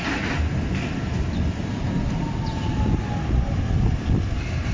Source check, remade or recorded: recorded